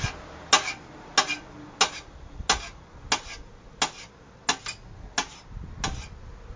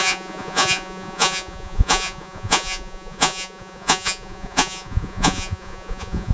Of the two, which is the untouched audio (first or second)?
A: first